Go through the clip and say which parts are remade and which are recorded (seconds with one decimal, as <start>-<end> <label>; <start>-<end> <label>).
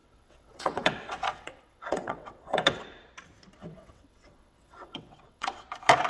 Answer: 0.0-2.8 remade; 2.8-3.6 recorded; 3.6-5.6 remade; 5.6-6.1 recorded